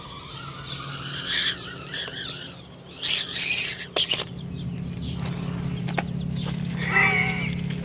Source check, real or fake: real